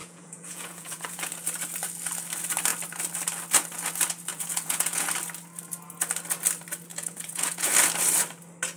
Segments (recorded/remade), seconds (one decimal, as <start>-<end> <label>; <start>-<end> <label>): 0.0-1.3 remade; 1.3-4.3 recorded; 4.3-5.1 remade; 5.1-6.9 recorded; 6.9-7.7 remade; 7.7-8.8 recorded